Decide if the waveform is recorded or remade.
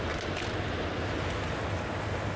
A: recorded